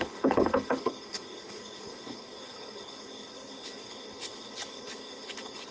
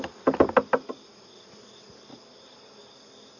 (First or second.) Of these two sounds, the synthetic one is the first